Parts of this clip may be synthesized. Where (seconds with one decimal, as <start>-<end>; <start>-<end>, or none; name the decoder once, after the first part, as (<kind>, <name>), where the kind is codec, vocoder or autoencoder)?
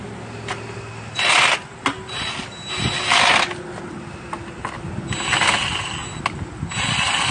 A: none